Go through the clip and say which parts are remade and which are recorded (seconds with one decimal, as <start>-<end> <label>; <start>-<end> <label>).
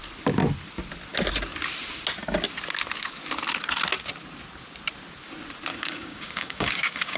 0.0-5.7 recorded; 5.7-7.2 remade